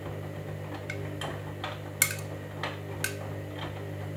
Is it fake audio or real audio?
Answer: real